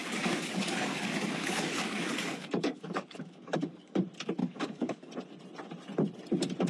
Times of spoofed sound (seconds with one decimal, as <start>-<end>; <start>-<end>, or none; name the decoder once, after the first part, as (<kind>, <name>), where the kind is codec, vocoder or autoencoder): 0.0-4.0 (codec, DAC); 4.4-5.1